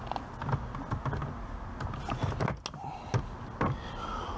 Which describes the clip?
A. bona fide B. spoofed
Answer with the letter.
A